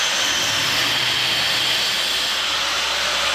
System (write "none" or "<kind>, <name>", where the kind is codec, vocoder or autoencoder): none